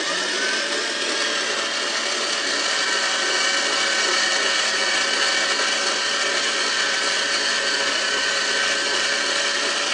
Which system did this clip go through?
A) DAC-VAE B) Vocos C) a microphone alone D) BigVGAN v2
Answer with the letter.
C